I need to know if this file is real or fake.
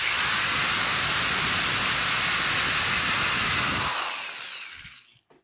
real